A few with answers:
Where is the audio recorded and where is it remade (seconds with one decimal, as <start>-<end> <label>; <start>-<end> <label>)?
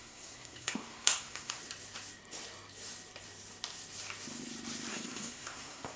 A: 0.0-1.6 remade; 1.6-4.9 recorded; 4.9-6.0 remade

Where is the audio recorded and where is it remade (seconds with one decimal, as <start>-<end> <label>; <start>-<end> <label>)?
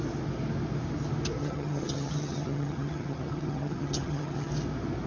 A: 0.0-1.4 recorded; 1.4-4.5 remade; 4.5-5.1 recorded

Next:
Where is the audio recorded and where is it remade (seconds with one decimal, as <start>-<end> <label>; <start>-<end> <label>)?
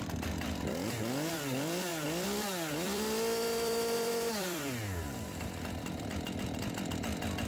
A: 0.0-7.5 remade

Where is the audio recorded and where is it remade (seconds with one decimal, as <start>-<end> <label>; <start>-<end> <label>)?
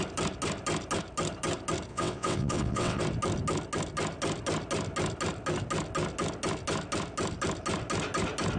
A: 0.0-1.9 recorded; 1.9-3.0 remade; 3.0-8.6 recorded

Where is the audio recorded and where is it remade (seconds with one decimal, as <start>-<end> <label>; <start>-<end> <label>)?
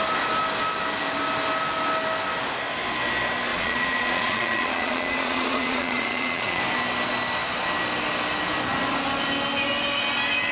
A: 0.0-3.5 recorded; 3.5-6.6 remade; 6.6-10.5 recorded